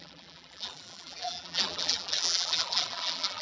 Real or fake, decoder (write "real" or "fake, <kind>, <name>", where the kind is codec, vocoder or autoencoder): fake, vocoder, BigVGAN v2